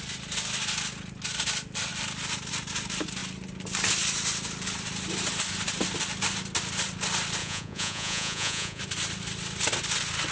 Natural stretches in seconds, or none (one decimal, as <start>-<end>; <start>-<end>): 0.0-7.4; 8.8-10.3